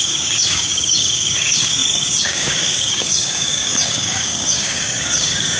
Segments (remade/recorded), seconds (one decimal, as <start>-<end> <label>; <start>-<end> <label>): 0.0-5.6 remade